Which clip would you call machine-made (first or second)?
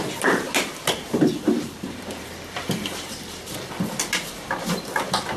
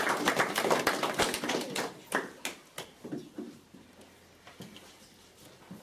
first